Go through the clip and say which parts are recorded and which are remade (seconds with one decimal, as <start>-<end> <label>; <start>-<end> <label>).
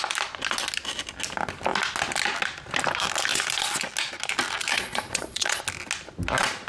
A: 0.0-4.7 recorded; 4.7-5.6 remade; 5.6-6.7 recorded